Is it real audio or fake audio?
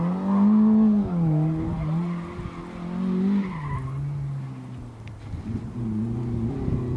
real